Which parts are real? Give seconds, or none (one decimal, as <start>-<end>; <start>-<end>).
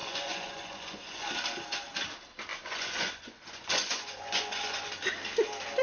1.3-2.5; 4.9-5.8